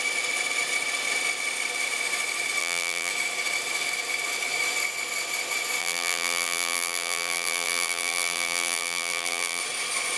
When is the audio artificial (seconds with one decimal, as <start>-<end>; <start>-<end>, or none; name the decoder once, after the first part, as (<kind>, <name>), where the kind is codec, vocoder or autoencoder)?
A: 2.6-3.1 (vocoder, BigVGAN v2); 5.8-9.6